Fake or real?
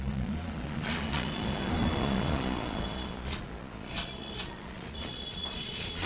fake